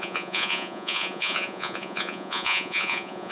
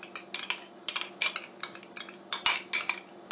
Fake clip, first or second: first